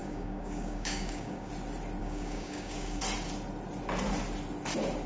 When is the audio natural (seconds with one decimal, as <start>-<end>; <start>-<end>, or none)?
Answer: 1.5-2.0; 3.0-5.1